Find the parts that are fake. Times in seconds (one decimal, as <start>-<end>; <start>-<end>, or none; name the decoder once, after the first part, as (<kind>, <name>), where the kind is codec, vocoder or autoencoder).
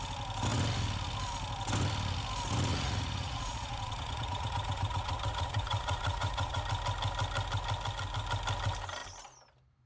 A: 2.7-6.6 (vocoder, Vocos)